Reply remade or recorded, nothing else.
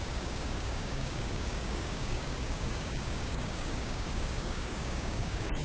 remade